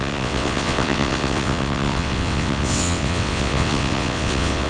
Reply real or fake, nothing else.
fake